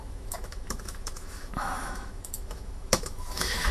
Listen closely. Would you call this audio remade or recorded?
remade